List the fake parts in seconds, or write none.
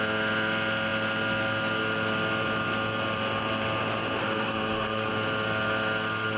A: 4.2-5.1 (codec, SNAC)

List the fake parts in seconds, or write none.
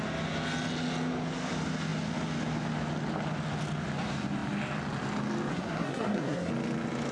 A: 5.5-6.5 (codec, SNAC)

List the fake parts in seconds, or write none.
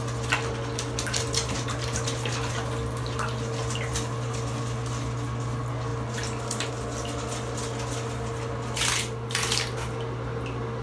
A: none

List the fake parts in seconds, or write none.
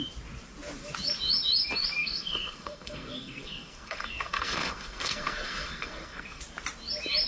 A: 2.0-6.4 (codec, SNAC)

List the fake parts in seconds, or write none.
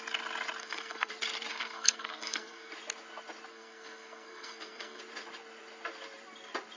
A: 0.6-1.1 (codec, SNAC); 1.5-2.7; 3.5-5.0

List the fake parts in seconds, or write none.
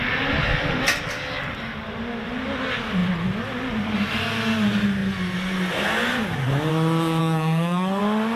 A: 7.2-8.0 (codec, SNAC)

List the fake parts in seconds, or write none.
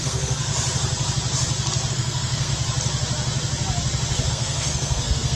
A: 0.0-0.5 (codec, SNAC); 1.9-2.5; 4.3-5.3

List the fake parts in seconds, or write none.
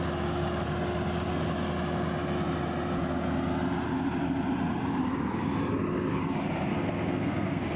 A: 6.7-7.8 (codec, SNAC)